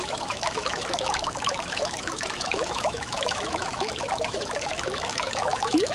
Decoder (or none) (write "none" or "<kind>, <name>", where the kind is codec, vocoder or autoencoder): autoencoder, DAC-VAE